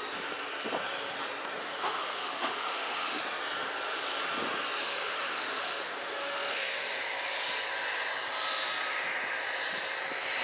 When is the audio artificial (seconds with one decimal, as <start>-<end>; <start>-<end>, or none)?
1.6-3.2; 4.8-7.0